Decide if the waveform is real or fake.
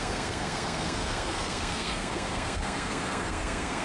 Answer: fake